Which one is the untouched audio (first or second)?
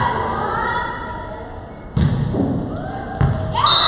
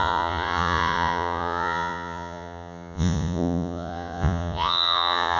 first